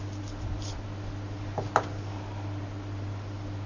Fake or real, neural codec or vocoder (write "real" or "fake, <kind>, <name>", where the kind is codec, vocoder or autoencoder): real